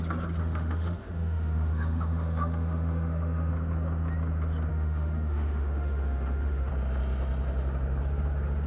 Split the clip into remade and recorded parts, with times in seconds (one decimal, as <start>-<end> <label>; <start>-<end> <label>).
0.0-0.4 recorded; 0.4-3.5 remade; 3.5-4.7 recorded; 4.7-6.7 remade; 6.7-8.7 recorded